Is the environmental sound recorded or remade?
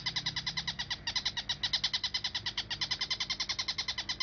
recorded